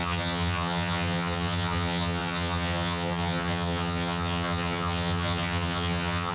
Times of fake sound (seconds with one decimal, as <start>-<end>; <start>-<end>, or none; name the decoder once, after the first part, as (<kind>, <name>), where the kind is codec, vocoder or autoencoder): 0.0-6.3 (vocoder, HiFi-GAN)